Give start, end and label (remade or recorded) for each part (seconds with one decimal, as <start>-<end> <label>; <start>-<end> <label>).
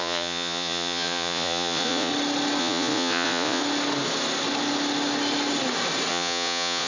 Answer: 0.0-2.1 remade; 2.1-2.6 recorded; 2.6-3.6 remade; 3.6-6.1 recorded; 6.1-6.9 remade